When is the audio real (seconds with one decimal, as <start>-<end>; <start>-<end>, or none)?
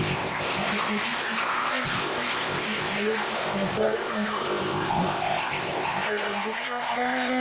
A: none